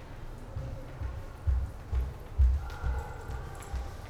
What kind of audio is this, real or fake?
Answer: real